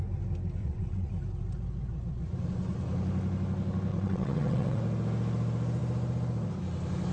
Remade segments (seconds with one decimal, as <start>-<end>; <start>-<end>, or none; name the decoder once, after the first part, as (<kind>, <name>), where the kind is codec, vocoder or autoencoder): 0.6-1.1 (vocoder, WaveNeXt); 3.9-4.8